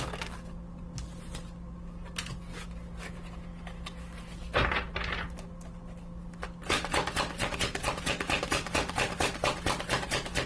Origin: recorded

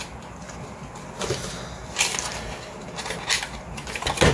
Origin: recorded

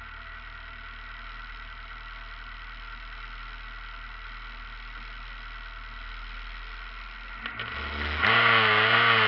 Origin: recorded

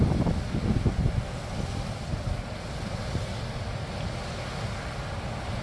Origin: recorded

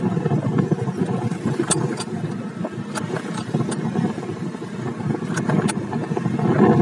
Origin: recorded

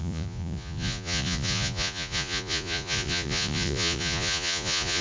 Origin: remade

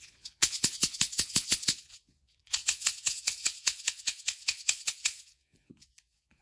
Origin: remade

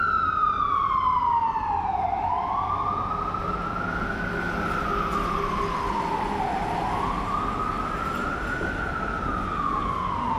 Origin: recorded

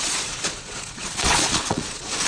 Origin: remade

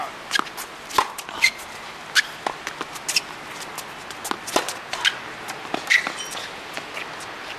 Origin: recorded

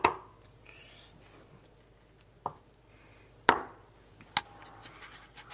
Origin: recorded